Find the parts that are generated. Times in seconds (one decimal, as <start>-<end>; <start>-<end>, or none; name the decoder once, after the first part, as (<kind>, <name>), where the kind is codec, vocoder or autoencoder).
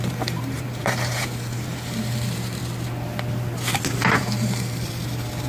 0.0-2.6 (vocoder, BigVGAN v2); 4.2-5.5